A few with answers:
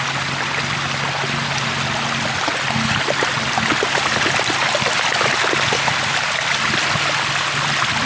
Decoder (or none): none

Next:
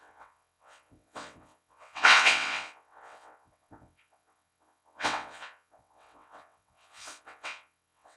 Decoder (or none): vocoder, WaveNeXt